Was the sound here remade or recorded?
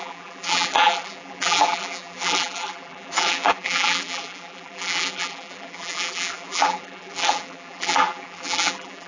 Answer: remade